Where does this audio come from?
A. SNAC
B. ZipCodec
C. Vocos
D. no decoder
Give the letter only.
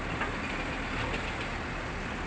D